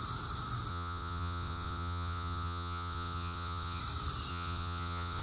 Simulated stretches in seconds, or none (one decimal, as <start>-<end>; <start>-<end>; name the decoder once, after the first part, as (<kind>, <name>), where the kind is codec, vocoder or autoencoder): 0.7-3.8 (vocoder, WaveNeXt); 4.3-5.2